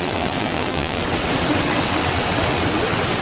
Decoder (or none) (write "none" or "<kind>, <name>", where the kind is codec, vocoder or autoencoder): vocoder, WaveNeXt